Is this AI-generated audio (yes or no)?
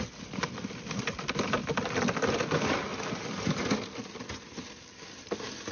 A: no